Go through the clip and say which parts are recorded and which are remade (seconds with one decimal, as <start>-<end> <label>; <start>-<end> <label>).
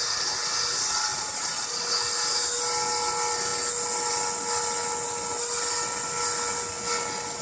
0.0-7.4 recorded